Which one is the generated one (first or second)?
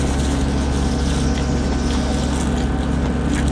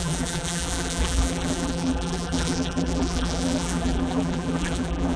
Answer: second